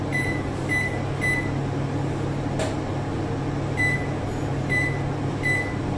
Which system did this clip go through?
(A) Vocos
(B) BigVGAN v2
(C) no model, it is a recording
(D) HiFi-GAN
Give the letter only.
C